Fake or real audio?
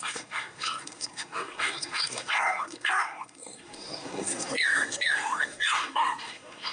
fake